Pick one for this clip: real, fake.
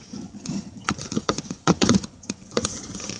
fake